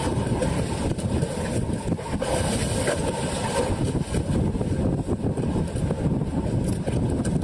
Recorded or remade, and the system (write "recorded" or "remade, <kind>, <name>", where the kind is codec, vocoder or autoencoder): recorded